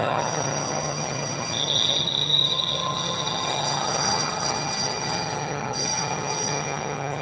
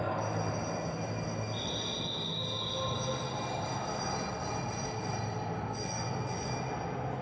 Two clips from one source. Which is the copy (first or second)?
first